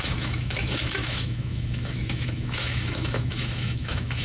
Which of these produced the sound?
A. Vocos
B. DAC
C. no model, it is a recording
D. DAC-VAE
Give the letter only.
D